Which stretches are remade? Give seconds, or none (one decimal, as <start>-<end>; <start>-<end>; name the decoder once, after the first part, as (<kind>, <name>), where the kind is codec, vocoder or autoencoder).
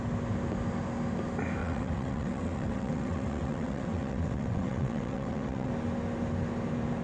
1.6-5.7 (vocoder, WaveNeXt)